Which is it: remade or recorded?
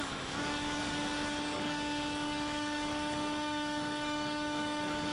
remade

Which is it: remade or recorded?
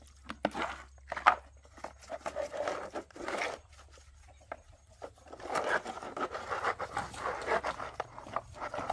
recorded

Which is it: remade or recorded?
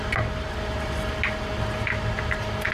recorded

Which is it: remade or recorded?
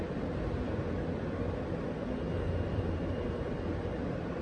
recorded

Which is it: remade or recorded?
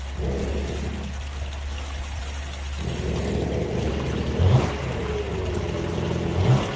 recorded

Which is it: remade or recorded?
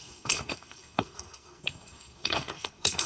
remade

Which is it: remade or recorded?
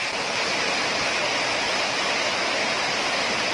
recorded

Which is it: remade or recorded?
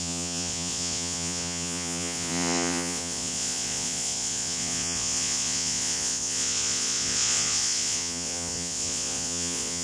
remade